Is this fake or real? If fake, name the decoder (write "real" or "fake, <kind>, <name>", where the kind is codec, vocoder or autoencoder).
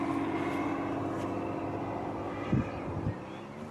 real